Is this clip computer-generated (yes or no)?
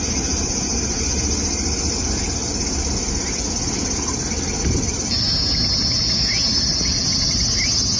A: no